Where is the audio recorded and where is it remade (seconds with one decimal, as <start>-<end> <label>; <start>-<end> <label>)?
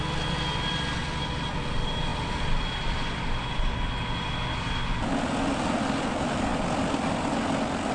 0.0-7.9 recorded